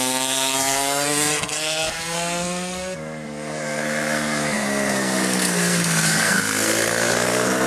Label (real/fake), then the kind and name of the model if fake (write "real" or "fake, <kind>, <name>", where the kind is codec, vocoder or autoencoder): fake, codec, SNAC